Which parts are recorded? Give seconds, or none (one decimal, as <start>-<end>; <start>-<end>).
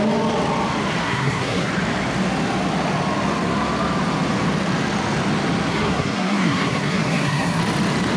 0.0-1.0; 1.7-5.7; 7.6-8.2